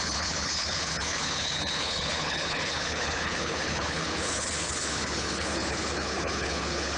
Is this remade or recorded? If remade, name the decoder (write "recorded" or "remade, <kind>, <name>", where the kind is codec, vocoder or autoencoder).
remade, codec, HILCodec